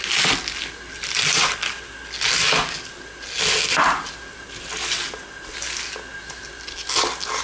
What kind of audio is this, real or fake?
real